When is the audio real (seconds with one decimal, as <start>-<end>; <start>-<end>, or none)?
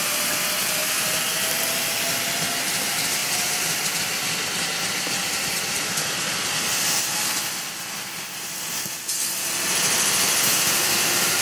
none